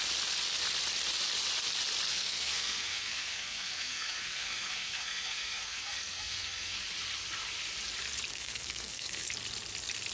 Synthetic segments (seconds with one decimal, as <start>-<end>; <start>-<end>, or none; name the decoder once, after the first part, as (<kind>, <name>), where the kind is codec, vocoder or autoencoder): 2.1-6.8 (codec, SNAC); 8.3-9.3